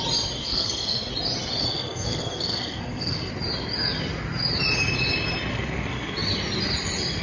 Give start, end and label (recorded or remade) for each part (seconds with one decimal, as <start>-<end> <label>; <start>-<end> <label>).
0.0-0.4 recorded; 0.4-1.1 remade; 1.1-1.6 recorded; 1.6-3.3 remade; 3.3-5.5 recorded; 5.5-6.1 remade; 6.1-7.2 recorded